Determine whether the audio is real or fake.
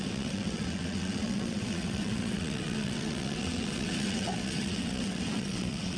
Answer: fake